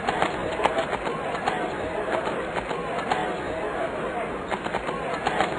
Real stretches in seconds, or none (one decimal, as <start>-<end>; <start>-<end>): 0.0-0.4; 2.5-5.6